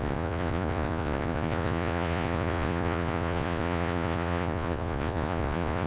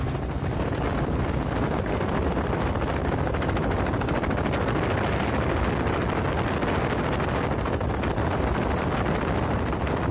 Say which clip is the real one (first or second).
second